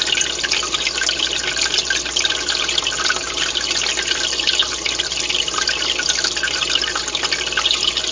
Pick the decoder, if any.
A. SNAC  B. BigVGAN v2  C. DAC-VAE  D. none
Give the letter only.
D